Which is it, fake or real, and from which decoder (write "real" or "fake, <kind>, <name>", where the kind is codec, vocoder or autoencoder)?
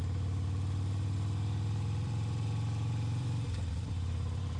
fake, vocoder, BigVGAN v2